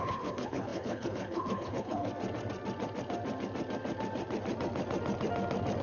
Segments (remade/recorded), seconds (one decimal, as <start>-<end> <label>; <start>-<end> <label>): 0.0-2.1 remade; 2.1-5.8 recorded